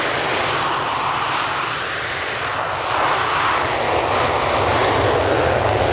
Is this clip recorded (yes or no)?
yes